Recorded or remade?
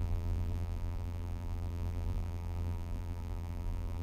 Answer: remade